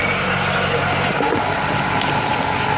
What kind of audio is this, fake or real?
real